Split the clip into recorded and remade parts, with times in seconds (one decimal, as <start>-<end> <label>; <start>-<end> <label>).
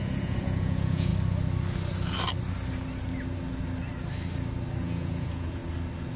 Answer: 0.0-1.1 remade; 1.1-4.8 recorded; 4.8-5.6 remade; 5.6-6.2 recorded